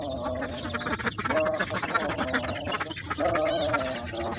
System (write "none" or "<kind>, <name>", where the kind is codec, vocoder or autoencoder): none